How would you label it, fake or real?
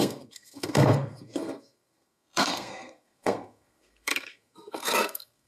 fake